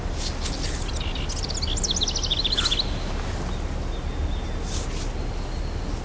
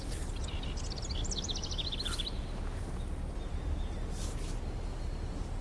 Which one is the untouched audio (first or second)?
first